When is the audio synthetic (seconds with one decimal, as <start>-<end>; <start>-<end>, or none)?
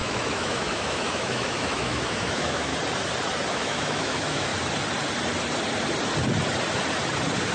0.0-2.7; 3.5-4.5